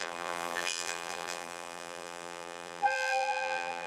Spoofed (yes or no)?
yes